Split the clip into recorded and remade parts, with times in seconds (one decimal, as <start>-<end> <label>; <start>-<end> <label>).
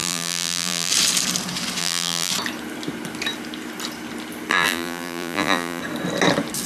0.0-0.9 remade; 0.9-1.8 recorded; 1.8-2.3 remade; 2.3-4.5 recorded; 4.5-5.8 remade; 5.8-6.7 recorded